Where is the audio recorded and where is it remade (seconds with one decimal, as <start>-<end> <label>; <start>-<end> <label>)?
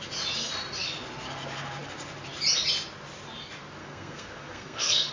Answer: 0.0-3.8 recorded; 3.8-5.1 remade